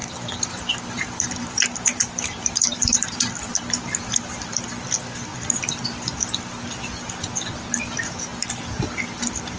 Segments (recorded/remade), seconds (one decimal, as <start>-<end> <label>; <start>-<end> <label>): 0.0-4.2 remade; 4.2-9.6 recorded